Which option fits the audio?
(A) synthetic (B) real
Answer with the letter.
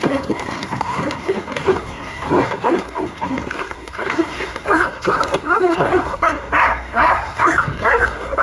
A